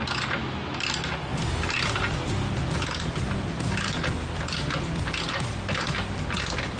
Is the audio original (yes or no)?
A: yes